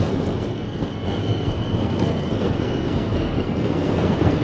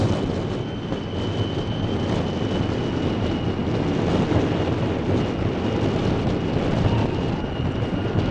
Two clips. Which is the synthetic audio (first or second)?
first